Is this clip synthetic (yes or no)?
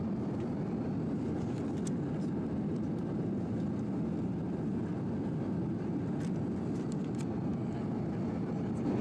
no